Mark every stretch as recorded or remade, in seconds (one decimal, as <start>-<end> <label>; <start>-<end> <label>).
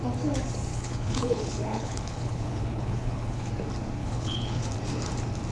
0.0-0.7 recorded; 0.7-3.5 remade; 3.5-4.0 recorded; 4.0-4.7 remade; 4.7-5.5 recorded